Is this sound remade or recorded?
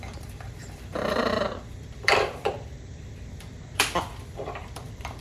remade